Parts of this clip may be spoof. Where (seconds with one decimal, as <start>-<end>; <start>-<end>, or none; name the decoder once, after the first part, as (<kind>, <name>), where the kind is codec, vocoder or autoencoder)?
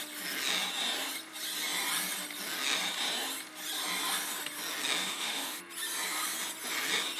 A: 5.0-5.6 (autoencoder, DAC-VAE)